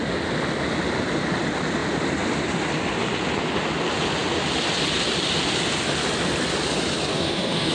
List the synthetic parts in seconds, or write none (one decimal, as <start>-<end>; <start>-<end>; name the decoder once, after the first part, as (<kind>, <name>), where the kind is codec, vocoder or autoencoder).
7.1-7.7 (autoencoder, DAC-VAE)